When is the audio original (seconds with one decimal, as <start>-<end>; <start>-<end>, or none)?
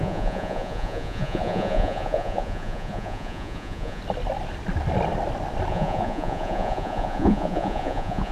4.0-5.7